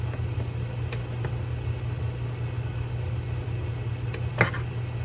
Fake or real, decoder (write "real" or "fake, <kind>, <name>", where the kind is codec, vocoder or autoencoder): real